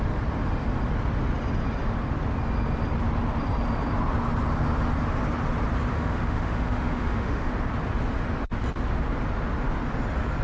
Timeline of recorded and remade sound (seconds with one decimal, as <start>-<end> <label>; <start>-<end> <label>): 0.0-5.9 recorded; 5.9-7.5 remade; 7.5-10.4 recorded